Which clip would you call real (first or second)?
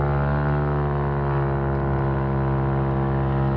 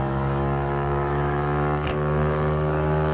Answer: first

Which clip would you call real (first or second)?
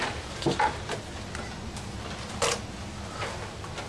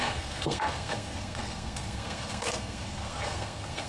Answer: first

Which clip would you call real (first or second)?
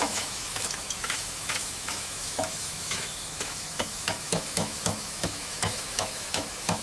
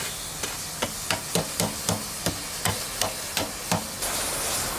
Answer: second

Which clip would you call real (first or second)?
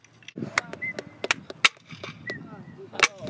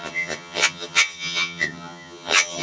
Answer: first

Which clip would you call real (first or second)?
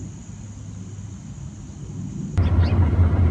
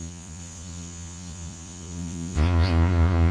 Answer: first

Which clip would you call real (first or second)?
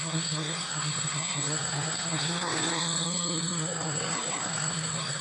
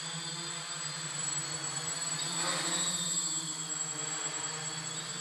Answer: second